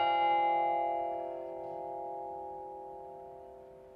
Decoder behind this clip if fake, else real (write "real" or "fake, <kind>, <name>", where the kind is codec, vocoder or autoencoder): real